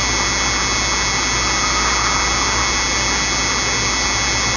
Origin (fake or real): real